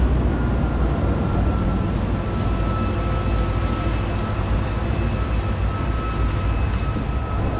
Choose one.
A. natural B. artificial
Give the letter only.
A